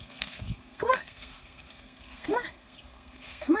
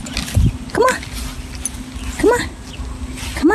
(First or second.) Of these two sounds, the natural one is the second